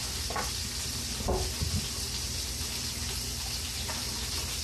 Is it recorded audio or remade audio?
recorded